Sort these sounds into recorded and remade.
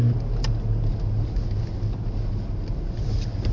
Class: recorded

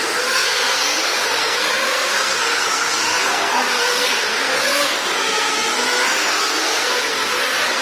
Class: remade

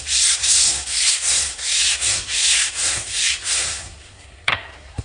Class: remade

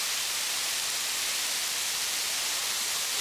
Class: recorded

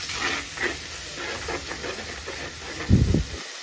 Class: recorded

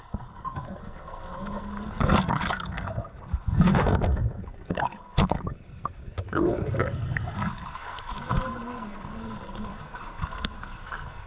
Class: remade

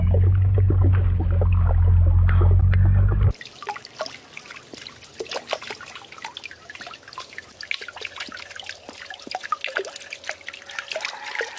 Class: recorded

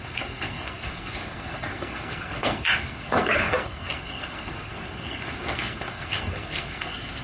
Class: remade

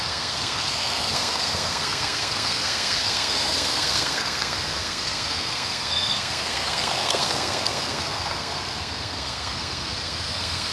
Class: remade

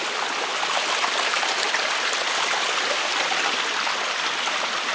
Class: recorded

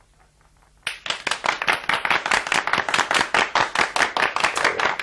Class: recorded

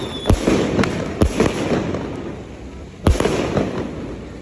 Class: recorded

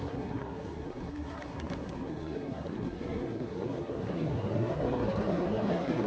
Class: remade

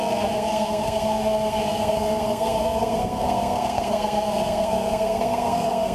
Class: remade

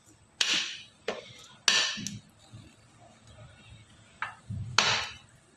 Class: recorded